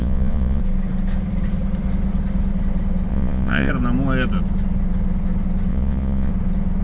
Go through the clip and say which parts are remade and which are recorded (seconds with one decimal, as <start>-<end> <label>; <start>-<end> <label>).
0.0-0.6 remade; 0.6-3.1 recorded; 3.1-3.7 remade; 3.7-5.7 recorded; 5.7-6.3 remade; 6.3-6.8 recorded